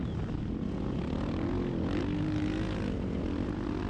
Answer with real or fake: real